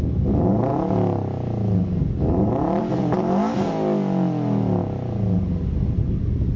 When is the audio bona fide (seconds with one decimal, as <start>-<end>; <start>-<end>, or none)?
0.0-6.6